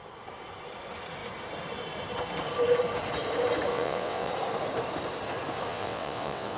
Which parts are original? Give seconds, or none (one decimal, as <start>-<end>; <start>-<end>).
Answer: 0.0-3.7; 4.3-5.7